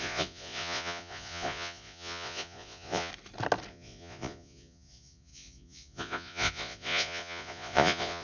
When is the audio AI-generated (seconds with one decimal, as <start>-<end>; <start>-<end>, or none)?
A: 0.0-3.1; 3.7-8.2